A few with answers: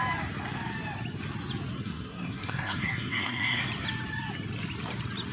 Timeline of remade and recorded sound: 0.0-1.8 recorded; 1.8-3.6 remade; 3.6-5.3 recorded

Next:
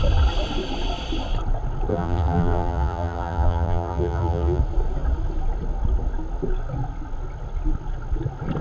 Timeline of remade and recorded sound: 0.0-1.9 recorded; 1.9-4.6 remade; 4.6-8.6 recorded

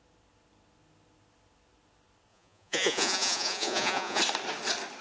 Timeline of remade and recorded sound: 0.0-2.3 recorded; 2.3-4.2 remade; 4.2-5.0 recorded

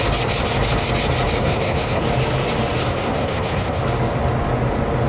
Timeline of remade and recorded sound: 0.0-1.4 recorded; 1.4-2.0 remade; 2.0-2.8 recorded; 2.8-3.8 remade; 3.8-5.1 recorded

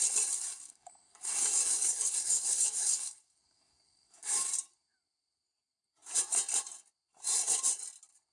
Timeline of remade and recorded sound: 0.0-0.5 recorded; 0.5-4.5 remade; 4.5-8.3 recorded

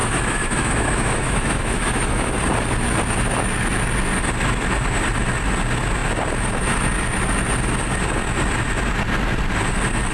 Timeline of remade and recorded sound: 0.0-2.3 remade; 2.3-10.1 recorded

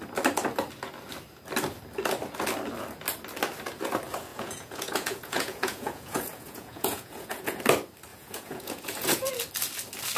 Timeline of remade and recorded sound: 0.0-4.3 recorded; 4.3-7.6 remade; 7.6-8.1 recorded; 8.1-9.3 remade; 9.3-10.2 recorded